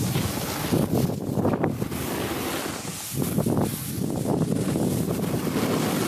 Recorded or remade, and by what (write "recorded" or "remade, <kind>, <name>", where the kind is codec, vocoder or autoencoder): recorded